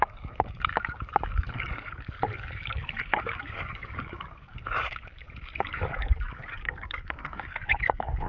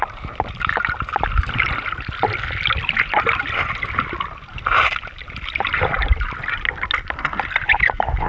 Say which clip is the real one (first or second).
second